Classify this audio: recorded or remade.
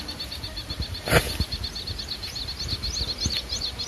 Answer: recorded